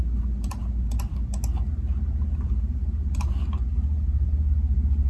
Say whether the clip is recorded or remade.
recorded